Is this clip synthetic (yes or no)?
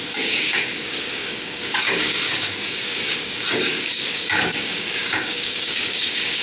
yes